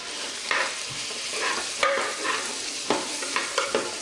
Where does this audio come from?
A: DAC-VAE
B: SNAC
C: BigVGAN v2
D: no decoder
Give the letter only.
C